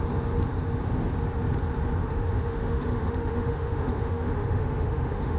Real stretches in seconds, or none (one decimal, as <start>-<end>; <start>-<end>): 0.0-2.0